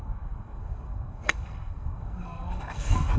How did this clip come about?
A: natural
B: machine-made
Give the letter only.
B